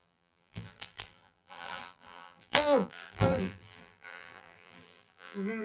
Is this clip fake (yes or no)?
yes